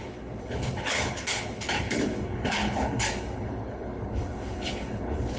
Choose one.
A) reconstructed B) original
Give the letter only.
A